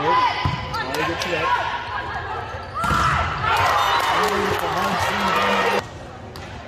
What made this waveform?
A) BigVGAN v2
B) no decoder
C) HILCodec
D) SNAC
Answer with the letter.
B